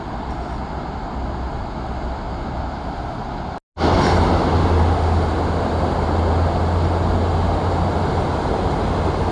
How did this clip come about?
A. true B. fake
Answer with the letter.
A